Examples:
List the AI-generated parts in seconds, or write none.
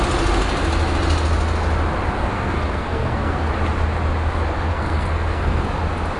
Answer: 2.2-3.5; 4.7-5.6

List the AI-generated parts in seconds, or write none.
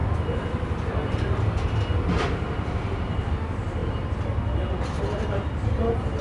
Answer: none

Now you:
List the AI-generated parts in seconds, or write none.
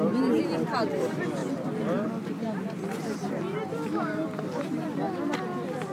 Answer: none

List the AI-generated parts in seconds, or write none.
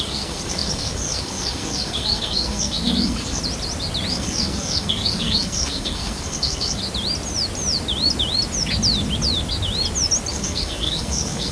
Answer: 0.0-3.4; 4.1-6.8; 10.3-11.5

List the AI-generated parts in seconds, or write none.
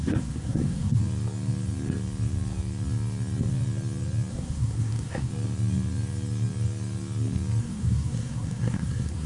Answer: 0.0-1.0; 4.3-5.3; 7.6-9.3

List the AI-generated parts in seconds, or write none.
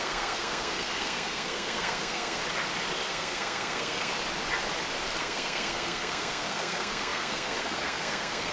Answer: 0.0-2.4; 3.1-4.1; 5.2-8.5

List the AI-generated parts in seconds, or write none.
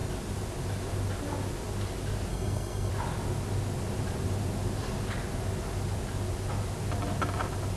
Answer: 2.3-2.9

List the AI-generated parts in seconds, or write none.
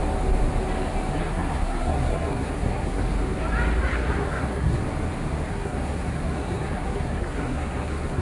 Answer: 1.2-3.0; 3.9-4.8; 5.5-8.2